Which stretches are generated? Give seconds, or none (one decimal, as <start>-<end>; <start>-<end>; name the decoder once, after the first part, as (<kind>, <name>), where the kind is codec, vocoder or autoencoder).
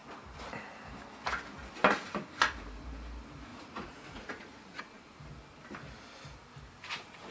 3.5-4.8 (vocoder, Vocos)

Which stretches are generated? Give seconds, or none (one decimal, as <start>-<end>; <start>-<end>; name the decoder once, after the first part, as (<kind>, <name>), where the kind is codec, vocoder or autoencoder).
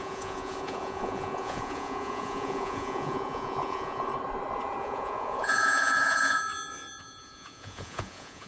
0.0-4.1 (vocoder, Vocos); 4.8-6.5; 7.0-8.5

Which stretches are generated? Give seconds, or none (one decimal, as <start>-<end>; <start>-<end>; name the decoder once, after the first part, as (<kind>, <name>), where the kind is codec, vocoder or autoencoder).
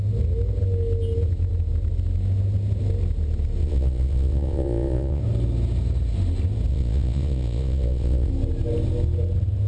3.6-5.2 (vocoder, Vocos); 6.7-8.3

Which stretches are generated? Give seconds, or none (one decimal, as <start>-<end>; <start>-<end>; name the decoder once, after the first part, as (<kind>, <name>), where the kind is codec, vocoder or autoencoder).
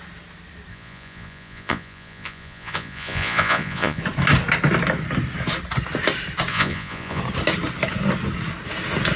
0.7-4.0 (vocoder, Vocos); 6.5-7.2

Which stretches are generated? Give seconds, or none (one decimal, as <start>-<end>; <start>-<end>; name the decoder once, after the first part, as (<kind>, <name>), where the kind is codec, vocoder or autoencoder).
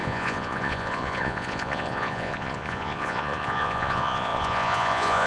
0.0-5.3 (vocoder, Vocos)